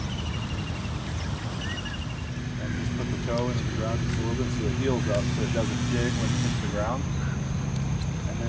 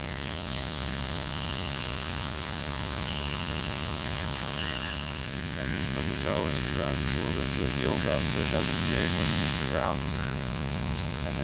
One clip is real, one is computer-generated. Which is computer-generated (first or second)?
second